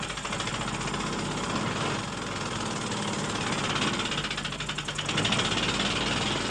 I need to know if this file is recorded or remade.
recorded